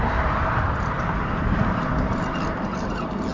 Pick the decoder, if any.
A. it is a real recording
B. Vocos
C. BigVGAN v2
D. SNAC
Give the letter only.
A